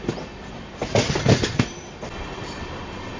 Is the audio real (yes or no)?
yes